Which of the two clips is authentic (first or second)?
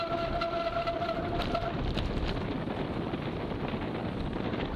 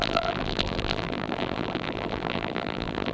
first